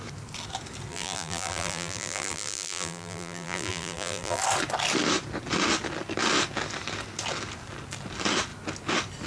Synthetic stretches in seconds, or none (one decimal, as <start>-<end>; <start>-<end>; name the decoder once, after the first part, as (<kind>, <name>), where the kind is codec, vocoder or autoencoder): 0.9-4.4 (vocoder, BigVGAN v2)